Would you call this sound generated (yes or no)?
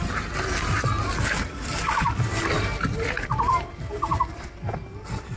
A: no